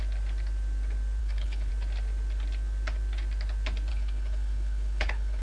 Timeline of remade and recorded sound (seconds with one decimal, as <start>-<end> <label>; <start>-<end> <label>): 0.0-1.2 recorded; 1.2-1.7 remade; 1.7-3.9 recorded; 3.9-5.4 remade